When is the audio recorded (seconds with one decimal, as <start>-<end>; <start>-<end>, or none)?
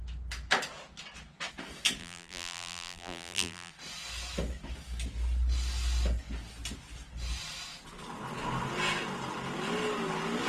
0.0-2.0; 3.7-10.5